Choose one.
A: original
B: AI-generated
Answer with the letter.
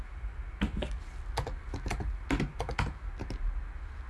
A